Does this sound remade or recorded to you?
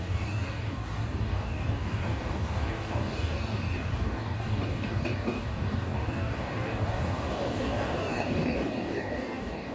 remade